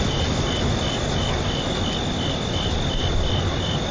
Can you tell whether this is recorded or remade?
recorded